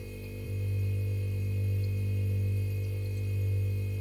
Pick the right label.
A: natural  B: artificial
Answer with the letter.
B